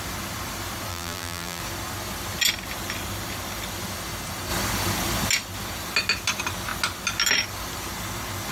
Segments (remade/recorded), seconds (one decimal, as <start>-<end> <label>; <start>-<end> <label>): 0.0-0.9 recorded; 0.9-1.6 remade; 1.6-8.5 recorded

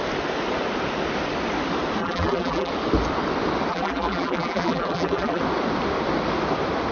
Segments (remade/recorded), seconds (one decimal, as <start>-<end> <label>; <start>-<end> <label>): 0.0-2.0 recorded; 2.0-2.7 remade; 2.7-3.7 recorded; 3.7-5.4 remade; 5.4-6.9 recorded

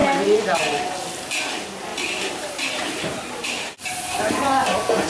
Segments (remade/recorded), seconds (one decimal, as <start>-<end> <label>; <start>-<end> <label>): 0.0-1.9 recorded; 1.9-4.2 remade; 4.2-5.1 recorded

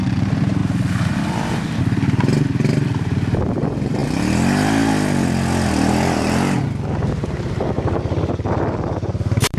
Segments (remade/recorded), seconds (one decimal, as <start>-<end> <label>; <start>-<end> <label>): 0.0-4.0 remade; 4.0-8.3 recorded; 8.3-9.6 remade

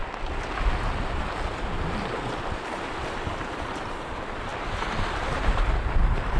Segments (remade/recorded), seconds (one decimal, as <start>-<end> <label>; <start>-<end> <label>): 0.0-1.7 recorded; 1.7-4.5 remade; 4.5-5.4 recorded; 5.4-6.4 remade

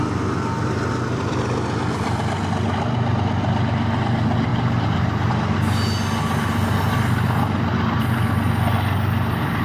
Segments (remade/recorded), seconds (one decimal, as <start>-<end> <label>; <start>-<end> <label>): 0.0-4.5 recorded; 4.5-5.3 remade; 5.3-9.6 recorded

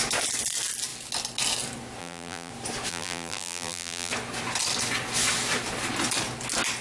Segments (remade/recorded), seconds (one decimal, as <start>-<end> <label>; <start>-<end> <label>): 0.0-2.0 recorded; 2.0-2.5 remade; 2.5-2.9 recorded; 2.9-4.1 remade; 4.1-6.8 recorded

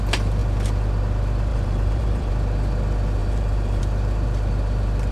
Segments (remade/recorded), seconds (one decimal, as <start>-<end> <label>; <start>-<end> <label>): 0.0-1.5 recorded; 1.5-2.3 remade; 2.3-3.2 recorded; 3.2-3.8 remade; 3.8-5.1 recorded